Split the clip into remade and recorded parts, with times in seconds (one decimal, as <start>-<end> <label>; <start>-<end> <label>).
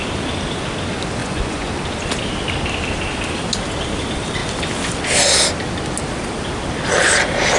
0.0-1.2 recorded; 1.2-1.7 remade; 1.7-7.6 recorded